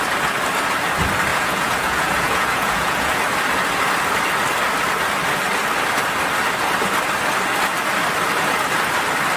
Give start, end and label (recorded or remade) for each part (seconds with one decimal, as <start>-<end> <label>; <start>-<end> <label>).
0.0-1.3 recorded; 1.3-3.2 remade; 3.2-9.4 recorded